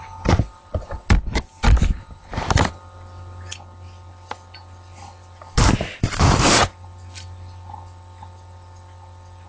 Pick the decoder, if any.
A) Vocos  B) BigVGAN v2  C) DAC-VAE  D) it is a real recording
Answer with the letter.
D